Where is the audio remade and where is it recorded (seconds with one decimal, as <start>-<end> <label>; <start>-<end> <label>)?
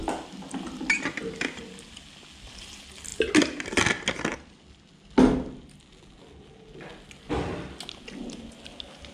0.0-9.1 recorded